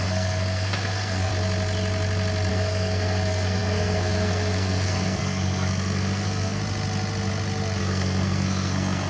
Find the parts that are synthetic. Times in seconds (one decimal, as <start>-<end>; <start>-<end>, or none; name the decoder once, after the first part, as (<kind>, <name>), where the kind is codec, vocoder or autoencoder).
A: 0.0-1.3 (codec, SNAC); 2.5-6.6; 7.8-9.1